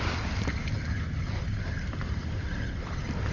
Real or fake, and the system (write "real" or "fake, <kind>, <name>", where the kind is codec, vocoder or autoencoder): real